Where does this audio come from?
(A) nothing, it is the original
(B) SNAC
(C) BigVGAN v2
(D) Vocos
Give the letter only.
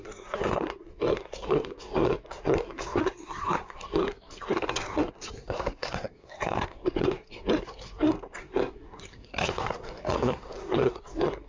B